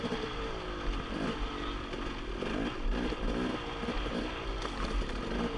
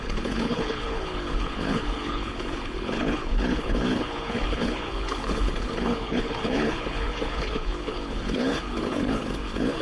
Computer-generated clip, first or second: second